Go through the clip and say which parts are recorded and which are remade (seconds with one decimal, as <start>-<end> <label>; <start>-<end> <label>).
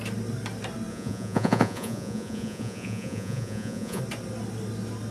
0.0-0.9 recorded; 0.9-4.0 remade; 4.0-5.1 recorded